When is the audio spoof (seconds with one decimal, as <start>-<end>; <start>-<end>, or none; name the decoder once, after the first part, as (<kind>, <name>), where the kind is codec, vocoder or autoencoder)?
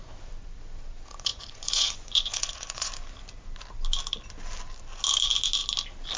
1.3-2.9 (vocoder, Vocos)